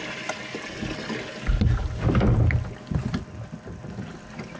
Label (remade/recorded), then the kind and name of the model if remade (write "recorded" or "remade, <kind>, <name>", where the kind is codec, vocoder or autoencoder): recorded